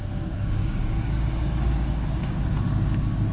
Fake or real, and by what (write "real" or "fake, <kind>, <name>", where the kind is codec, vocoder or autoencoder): fake, codec, DAC